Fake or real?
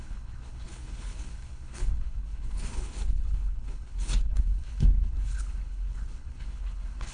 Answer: fake